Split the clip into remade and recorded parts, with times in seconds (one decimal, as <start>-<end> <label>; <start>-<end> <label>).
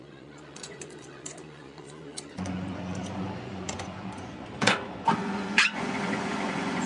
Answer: 0.0-6.9 remade